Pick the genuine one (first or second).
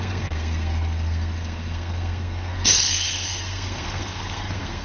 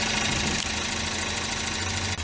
second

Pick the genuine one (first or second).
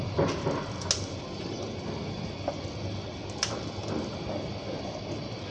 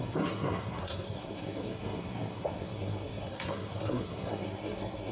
first